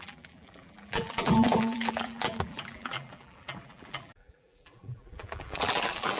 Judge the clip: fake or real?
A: fake